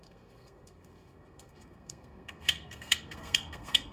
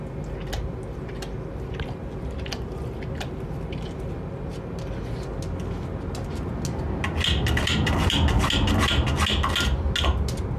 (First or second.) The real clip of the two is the second